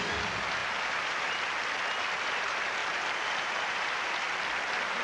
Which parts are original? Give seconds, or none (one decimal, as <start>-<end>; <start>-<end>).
0.0-0.6; 1.4-2.8; 4.1-5.0